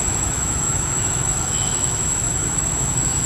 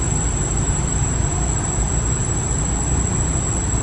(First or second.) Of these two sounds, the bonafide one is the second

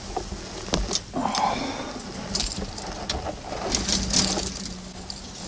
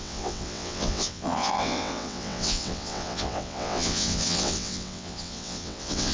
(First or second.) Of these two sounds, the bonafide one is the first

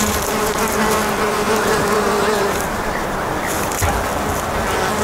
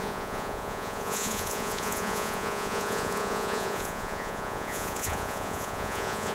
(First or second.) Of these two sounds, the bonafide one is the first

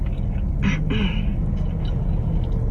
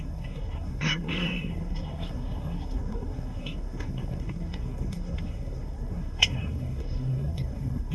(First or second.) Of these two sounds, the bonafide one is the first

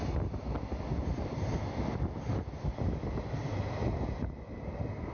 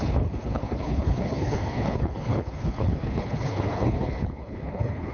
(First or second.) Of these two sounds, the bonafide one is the first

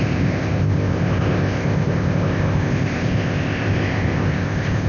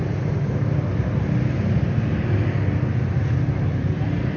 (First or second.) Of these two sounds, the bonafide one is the second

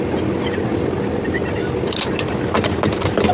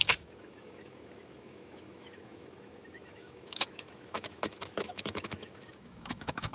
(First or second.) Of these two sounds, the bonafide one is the first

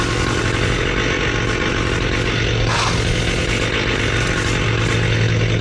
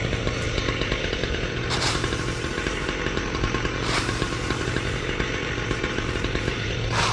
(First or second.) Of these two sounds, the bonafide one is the first